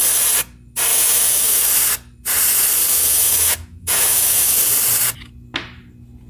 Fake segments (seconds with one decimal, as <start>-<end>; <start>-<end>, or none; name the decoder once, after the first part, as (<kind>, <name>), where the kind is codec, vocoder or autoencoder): 0.9-1.7 (autoencoder, DAC-VAE); 2.9-4.6